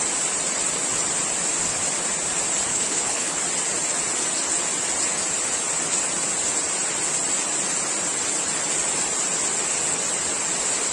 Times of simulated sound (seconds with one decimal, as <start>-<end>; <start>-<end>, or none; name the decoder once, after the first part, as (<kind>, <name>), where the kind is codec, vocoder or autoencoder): 2.7-3.4 (codec, HILCodec)